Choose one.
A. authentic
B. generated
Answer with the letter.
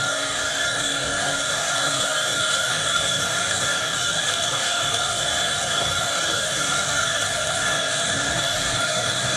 B